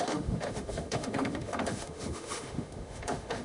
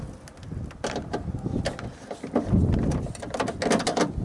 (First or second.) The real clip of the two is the second